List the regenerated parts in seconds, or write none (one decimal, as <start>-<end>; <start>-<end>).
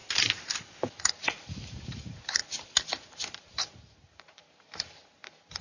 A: 1.1-2.4; 3.4-5.6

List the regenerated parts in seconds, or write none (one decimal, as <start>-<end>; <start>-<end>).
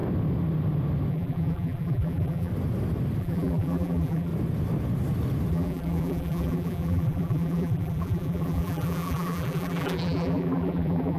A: 1.1-2.5; 3.2-4.3; 5.5-11.2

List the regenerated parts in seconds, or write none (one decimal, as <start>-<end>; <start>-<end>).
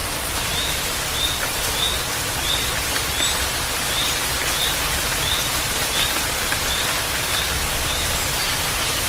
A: 0.0-1.7; 3.5-4.1; 5.1-5.8; 8.5-9.1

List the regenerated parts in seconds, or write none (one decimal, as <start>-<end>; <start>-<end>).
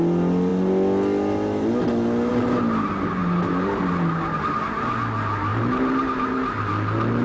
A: 3.2-3.9; 5.5-6.6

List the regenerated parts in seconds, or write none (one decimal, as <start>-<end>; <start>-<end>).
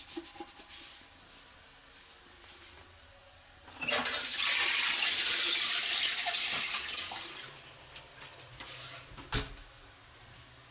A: 5.5-6.5